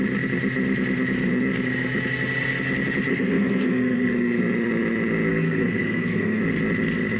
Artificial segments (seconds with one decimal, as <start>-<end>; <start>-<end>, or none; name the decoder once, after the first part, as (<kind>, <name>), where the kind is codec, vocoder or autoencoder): 3.1-4.4 (codec, SNAC); 5.3-6.4